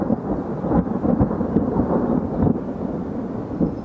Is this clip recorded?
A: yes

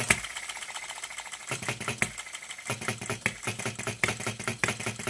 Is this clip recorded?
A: yes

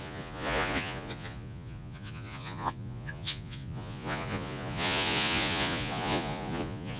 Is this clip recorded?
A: no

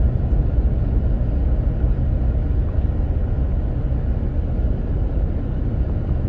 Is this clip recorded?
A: yes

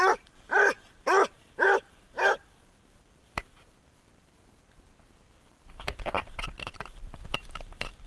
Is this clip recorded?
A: no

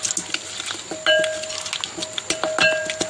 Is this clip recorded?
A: yes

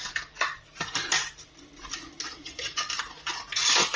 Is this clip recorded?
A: yes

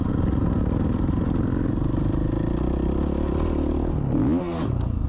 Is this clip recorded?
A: yes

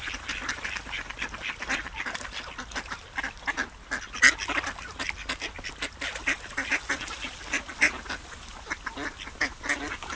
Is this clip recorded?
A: yes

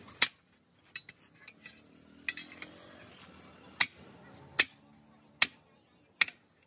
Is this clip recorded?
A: yes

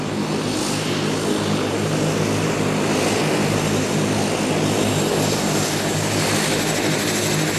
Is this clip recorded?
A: yes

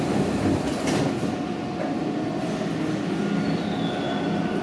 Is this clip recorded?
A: yes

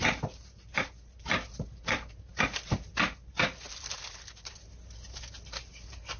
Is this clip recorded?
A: yes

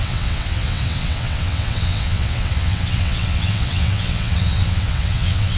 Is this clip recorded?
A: no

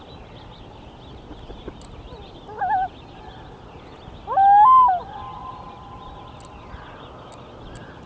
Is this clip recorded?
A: yes